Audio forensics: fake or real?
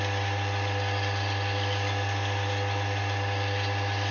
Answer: real